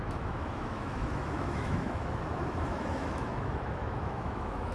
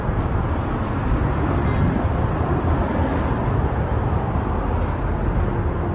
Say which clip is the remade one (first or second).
first